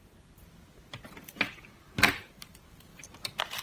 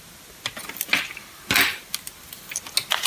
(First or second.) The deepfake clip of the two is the first